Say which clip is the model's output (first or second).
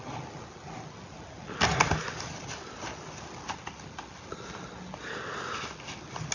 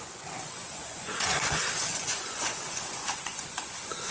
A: second